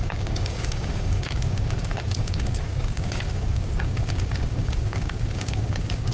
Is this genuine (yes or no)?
no